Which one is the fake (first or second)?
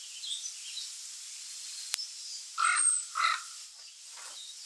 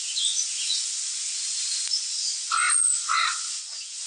second